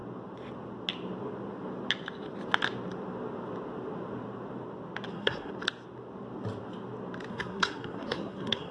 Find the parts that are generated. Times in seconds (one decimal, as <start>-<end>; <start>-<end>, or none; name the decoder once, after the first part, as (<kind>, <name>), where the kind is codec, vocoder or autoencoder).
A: 5.1-5.5 (codec, SNAC); 7.3-8.7